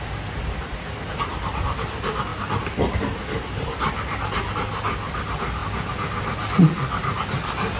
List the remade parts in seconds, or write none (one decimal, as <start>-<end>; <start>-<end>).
none